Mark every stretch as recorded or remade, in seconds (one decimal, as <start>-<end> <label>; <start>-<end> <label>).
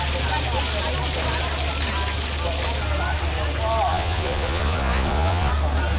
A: 0.0-3.9 recorded; 3.9-5.5 remade; 5.5-6.0 recorded